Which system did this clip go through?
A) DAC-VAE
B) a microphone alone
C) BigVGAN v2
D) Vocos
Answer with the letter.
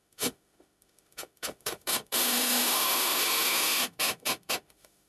A